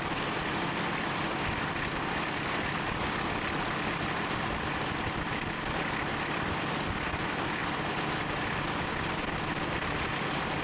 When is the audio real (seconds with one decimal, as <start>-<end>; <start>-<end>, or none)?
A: 0.0-10.6